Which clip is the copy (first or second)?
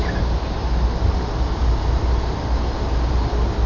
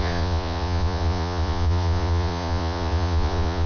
second